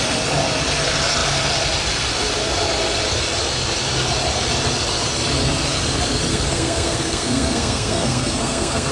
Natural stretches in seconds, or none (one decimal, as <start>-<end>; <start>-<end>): 0.0-6.3